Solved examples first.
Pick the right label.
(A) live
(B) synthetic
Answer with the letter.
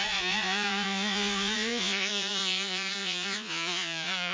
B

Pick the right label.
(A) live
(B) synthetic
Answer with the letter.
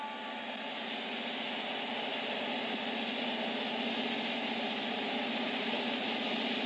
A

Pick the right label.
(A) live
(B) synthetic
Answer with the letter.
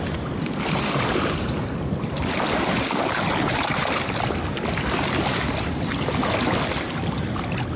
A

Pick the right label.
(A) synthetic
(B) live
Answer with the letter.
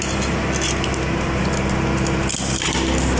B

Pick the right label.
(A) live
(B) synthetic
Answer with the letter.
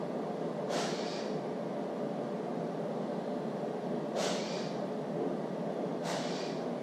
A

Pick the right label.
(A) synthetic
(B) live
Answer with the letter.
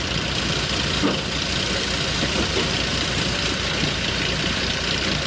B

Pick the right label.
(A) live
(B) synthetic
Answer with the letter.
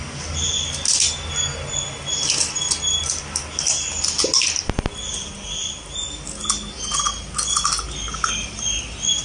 A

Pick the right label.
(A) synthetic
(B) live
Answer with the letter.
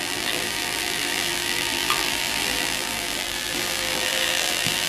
A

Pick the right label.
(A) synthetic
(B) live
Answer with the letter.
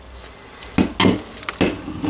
B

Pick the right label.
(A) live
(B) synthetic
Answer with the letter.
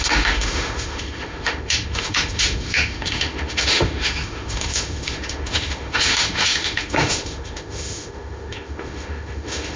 B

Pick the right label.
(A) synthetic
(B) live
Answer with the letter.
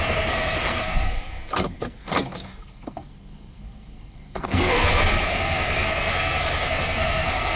A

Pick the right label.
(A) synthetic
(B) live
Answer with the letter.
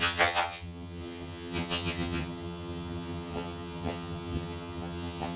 A